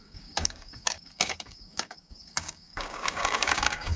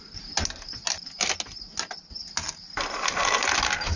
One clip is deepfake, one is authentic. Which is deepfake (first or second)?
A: first